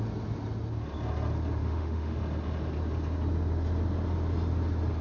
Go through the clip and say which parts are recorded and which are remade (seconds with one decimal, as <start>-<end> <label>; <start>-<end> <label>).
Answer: 0.0-1.6 recorded; 1.6-2.2 remade; 2.2-5.0 recorded